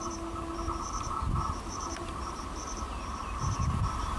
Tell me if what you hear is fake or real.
fake